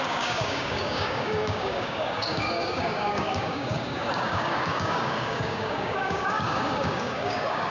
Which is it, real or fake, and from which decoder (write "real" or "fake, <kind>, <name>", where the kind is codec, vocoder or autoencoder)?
fake, codec, DAC